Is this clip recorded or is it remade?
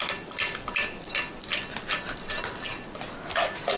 recorded